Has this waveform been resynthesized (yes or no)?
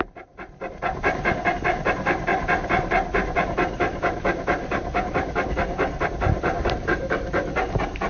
yes